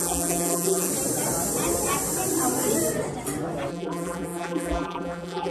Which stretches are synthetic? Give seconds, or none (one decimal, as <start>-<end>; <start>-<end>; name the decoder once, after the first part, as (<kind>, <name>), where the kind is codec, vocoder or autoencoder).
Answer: 0.0-0.9 (vocoder, BigVGAN v2); 3.7-5.5